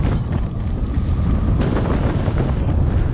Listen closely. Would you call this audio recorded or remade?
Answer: recorded